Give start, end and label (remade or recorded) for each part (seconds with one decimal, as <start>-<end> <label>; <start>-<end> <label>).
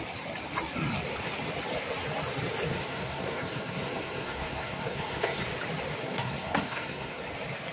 0.0-2.7 recorded; 2.7-5.4 remade; 5.4-6.0 recorded; 6.0-7.2 remade; 7.2-7.7 recorded